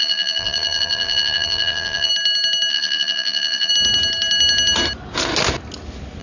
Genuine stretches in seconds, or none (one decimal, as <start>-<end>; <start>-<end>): 2.1-2.7; 3.7-6.2